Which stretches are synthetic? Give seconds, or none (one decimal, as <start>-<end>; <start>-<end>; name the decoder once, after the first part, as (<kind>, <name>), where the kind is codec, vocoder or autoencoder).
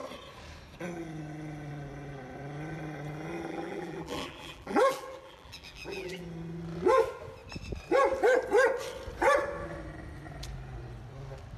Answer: 3.5-6.2 (vocoder, BigVGAN v2)